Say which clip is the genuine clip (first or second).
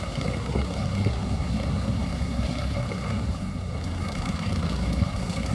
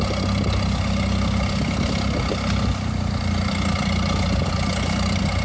second